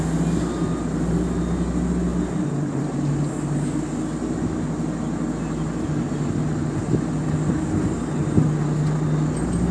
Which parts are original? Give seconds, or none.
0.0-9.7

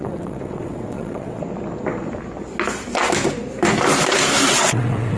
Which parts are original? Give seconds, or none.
1.4-4.5

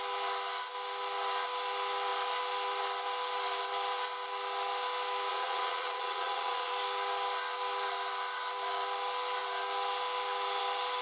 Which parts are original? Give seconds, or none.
0.0-5.3; 6.7-11.0

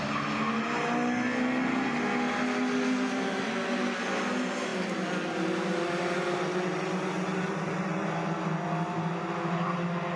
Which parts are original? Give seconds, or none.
0.0-10.2

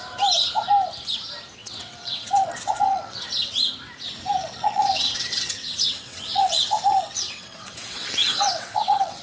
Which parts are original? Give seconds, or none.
0.0-1.6; 3.5-4.4

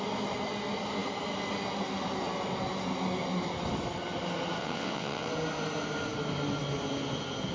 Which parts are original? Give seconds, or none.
0.0-4.6; 5.3-7.5

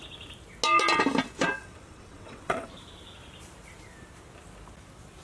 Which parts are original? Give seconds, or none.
0.0-1.6; 2.7-5.2